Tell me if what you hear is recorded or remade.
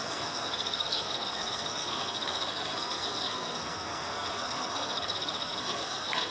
remade